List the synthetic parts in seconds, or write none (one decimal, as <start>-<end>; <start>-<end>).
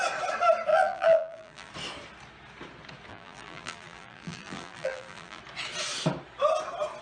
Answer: 0.7-1.7; 3.1-5.4